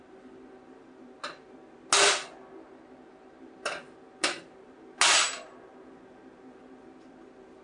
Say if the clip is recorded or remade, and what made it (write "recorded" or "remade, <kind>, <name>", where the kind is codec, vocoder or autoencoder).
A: recorded